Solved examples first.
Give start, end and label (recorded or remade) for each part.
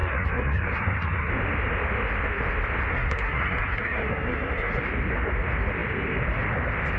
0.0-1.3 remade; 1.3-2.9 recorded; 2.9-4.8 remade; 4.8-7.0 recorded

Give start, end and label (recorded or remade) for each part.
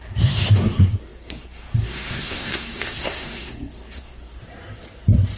0.0-4.4 remade; 4.4-5.4 recorded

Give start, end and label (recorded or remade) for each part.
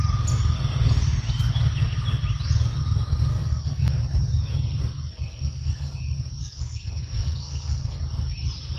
0.0-3.3 recorded; 3.3-3.9 remade; 3.9-5.1 recorded; 5.1-6.0 remade; 6.0-6.4 recorded; 6.4-8.0 remade; 8.0-8.8 recorded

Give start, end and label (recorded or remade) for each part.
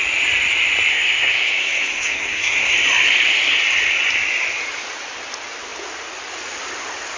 0.0-0.9 recorded; 0.9-2.7 remade; 2.7-7.2 recorded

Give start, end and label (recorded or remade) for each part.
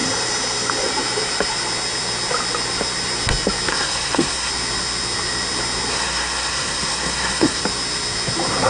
0.0-3.7 recorded; 3.7-4.5 remade; 4.5-5.9 recorded; 5.9-7.6 remade; 7.6-8.7 recorded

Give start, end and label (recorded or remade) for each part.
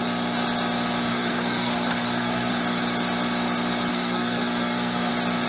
0.0-1.1 recorded; 1.1-2.5 remade; 2.5-3.9 recorded; 3.9-5.1 remade; 5.1-5.5 recorded